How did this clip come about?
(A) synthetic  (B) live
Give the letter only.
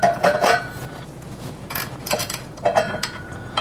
A